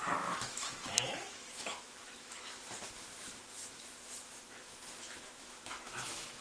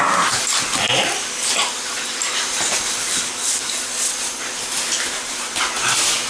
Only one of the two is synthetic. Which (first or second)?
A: first